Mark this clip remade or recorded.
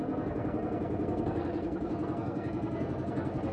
remade